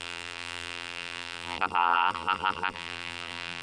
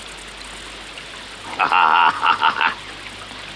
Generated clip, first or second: first